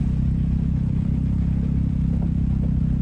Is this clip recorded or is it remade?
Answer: recorded